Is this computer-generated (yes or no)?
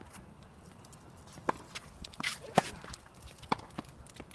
no